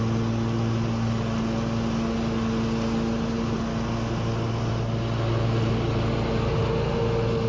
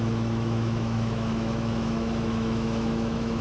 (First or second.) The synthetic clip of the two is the second